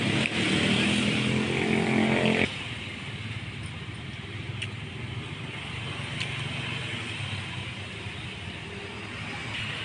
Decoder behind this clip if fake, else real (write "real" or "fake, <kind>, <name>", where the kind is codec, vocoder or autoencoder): real